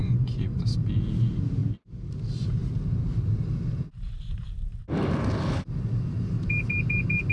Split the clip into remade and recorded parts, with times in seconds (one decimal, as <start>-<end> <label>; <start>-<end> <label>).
0.0-0.6 remade; 0.6-7.3 recorded